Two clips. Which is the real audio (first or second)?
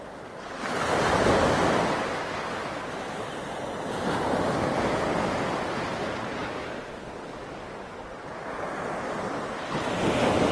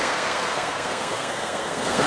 first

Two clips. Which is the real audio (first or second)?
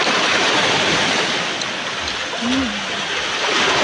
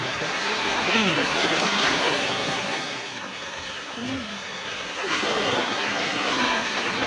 first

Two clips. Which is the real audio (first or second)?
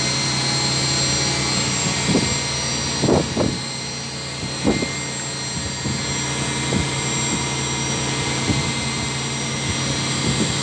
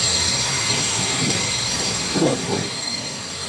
first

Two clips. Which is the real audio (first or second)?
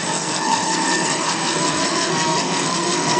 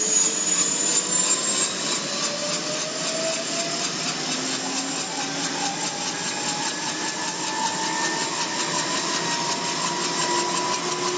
second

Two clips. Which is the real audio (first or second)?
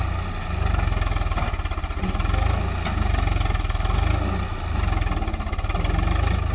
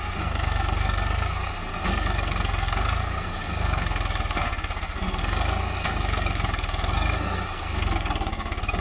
first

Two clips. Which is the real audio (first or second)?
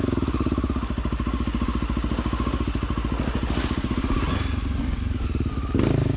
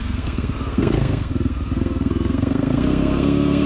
first